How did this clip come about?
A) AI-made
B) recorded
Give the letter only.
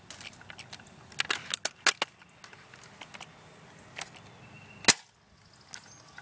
B